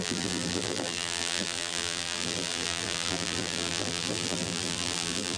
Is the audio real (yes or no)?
no